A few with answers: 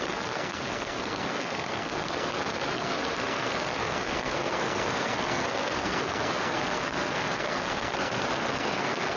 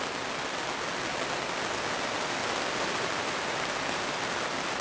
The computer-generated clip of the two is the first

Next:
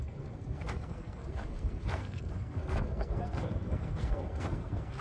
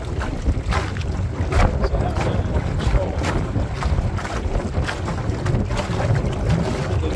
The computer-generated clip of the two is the first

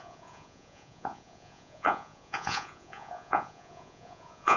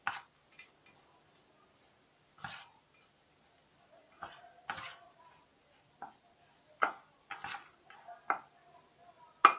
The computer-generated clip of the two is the first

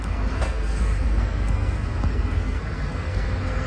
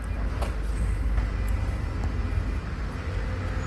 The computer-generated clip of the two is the first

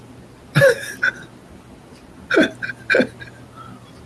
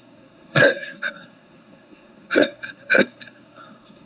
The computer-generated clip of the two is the second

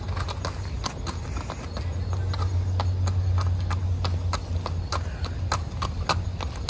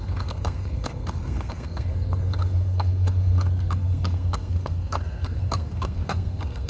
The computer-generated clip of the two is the second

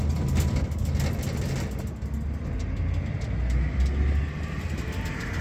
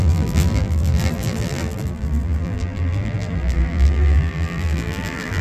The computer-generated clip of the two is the second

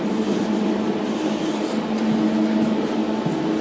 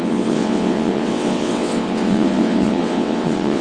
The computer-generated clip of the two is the second